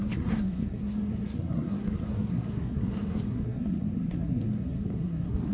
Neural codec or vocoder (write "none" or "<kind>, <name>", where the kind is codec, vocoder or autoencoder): codec, SNAC